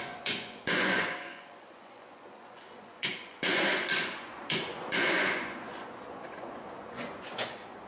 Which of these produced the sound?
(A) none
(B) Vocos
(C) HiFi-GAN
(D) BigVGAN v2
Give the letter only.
B